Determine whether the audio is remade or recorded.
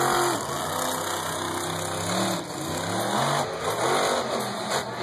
recorded